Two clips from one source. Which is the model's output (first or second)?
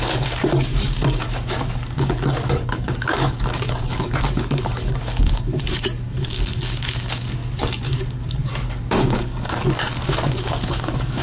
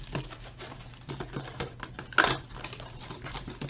first